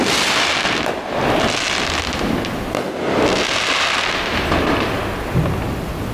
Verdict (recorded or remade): recorded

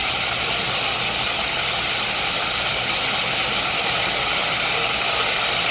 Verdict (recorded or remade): recorded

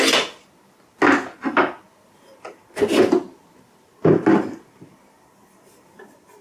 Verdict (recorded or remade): recorded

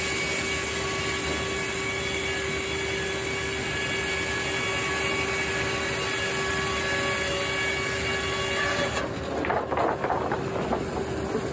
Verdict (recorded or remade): recorded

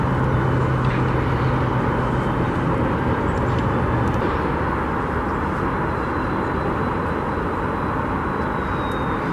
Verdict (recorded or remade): recorded